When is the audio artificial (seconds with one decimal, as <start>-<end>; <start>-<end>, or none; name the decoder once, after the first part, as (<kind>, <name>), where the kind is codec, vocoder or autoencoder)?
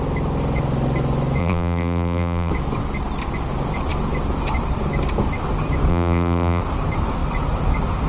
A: 1.4-2.5 (vocoder, BigVGAN v2); 5.9-6.6